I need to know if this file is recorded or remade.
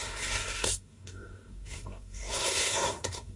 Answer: remade